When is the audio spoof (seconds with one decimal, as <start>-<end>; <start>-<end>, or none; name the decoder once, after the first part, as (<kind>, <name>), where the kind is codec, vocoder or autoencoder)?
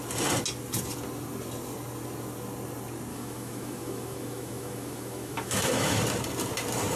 3.1-6.0 (autoencoder, DAC-VAE)